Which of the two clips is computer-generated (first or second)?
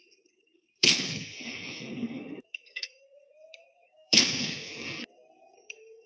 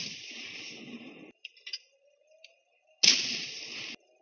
first